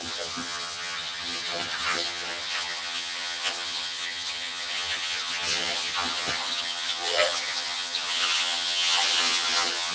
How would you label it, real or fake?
fake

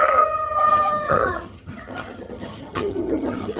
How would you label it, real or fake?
fake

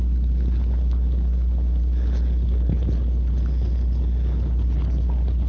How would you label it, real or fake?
real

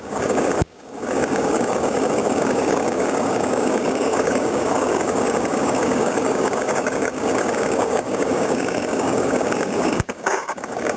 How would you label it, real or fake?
fake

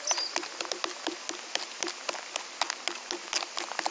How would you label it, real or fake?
real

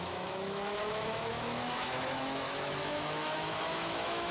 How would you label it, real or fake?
fake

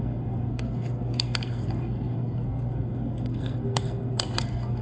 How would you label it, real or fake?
fake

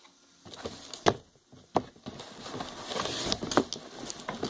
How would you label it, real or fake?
real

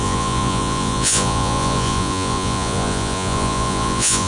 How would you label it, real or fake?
fake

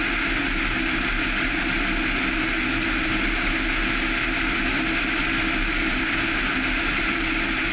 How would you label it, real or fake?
real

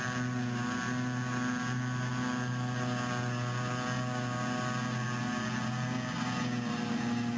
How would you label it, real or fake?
real